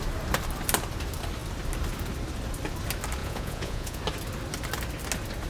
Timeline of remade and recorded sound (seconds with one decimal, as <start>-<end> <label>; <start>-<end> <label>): 0.0-3.2 recorded; 3.2-4.0 remade; 4.0-5.5 recorded